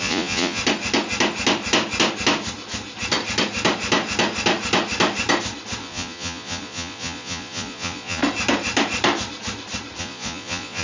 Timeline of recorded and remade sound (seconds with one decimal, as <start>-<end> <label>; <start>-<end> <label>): 0.0-0.6 remade; 0.6-5.8 recorded; 5.8-8.2 remade; 8.2-10.0 recorded; 10.0-10.8 remade

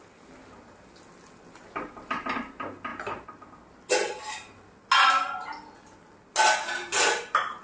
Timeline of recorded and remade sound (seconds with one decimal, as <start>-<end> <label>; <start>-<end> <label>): 0.0-7.6 recorded

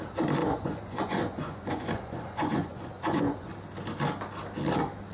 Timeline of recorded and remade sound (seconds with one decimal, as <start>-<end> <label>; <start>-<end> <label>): 0.0-0.4 recorded; 0.4-3.5 remade; 3.5-5.1 recorded

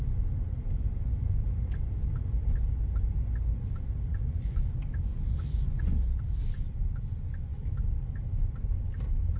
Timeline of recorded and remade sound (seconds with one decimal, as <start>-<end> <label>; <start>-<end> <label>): 0.0-4.1 recorded; 4.1-4.6 remade; 4.6-5.1 recorded; 5.1-6.2 remade; 6.2-9.4 recorded